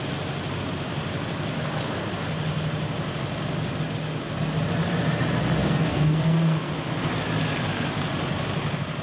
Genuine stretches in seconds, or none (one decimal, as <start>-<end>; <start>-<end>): 0.0-5.6; 6.7-9.0